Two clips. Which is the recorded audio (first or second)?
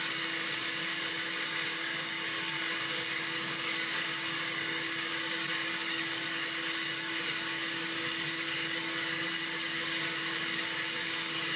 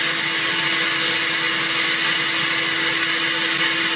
second